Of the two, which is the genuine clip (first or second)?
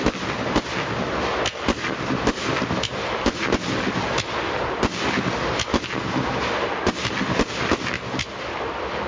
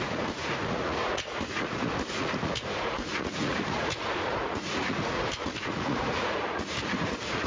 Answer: first